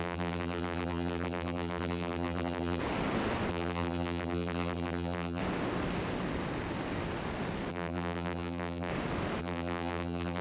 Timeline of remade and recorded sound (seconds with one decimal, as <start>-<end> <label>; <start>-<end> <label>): 0.0-2.8 remade; 2.8-3.5 recorded; 3.5-5.4 remade; 5.4-7.7 recorded; 7.7-8.9 remade; 8.9-9.4 recorded; 9.4-10.4 remade

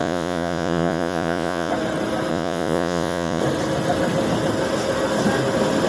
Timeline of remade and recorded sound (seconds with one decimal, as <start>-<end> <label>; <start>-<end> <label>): 0.0-1.7 remade; 1.7-2.3 recorded; 2.3-3.4 remade; 3.4-5.9 recorded